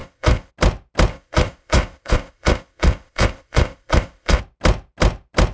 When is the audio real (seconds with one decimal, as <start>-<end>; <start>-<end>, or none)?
0.5-1.1; 4.4-5.5